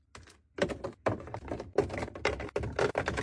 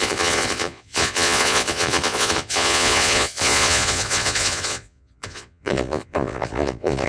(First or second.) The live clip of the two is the first